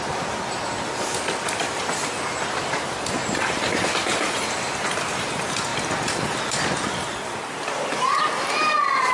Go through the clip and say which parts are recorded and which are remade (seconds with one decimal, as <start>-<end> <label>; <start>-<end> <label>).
0.0-9.1 recorded